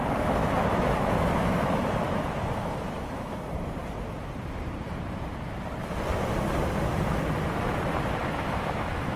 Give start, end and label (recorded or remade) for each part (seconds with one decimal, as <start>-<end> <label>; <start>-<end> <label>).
0.0-0.4 recorded; 0.4-3.4 remade; 3.4-8.2 recorded; 8.2-9.2 remade